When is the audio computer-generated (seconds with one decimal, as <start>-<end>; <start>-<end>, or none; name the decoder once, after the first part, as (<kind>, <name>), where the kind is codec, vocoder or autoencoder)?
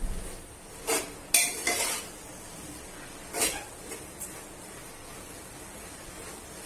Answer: none